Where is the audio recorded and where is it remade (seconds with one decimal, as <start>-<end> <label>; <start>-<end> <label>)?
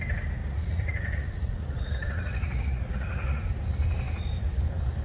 0.0-0.4 recorded; 0.4-3.4 remade; 3.4-5.0 recorded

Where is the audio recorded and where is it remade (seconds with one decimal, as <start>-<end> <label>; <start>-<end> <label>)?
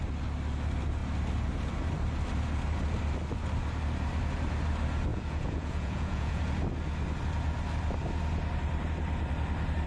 0.0-5.1 recorded; 5.1-6.4 remade; 6.4-9.9 recorded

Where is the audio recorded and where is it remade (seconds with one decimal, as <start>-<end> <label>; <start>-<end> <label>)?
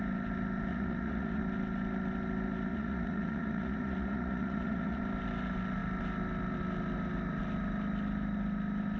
0.0-0.7 recorded; 0.7-1.4 remade; 1.4-2.7 recorded; 2.7-5.0 remade; 5.0-9.0 recorded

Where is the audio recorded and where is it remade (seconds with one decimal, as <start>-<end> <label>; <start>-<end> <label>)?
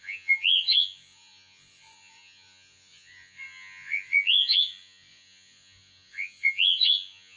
0.0-7.4 remade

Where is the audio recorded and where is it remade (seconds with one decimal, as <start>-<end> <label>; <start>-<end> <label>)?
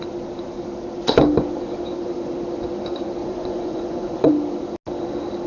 0.0-3.2 recorded; 3.2-4.3 remade; 4.3-5.5 recorded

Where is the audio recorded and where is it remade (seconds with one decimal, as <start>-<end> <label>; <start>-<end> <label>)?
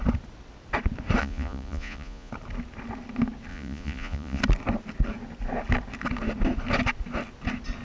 0.0-1.2 recorded; 1.2-2.3 remade; 2.3-3.5 recorded; 3.5-4.4 remade; 4.4-7.8 recorded